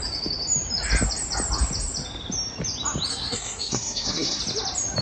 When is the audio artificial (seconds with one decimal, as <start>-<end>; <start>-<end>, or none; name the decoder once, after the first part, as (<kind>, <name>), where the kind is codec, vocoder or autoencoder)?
3.1-4.4 (codec, SNAC)